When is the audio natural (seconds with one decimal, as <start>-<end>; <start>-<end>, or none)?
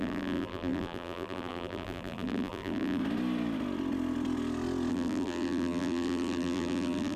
3.0-4.9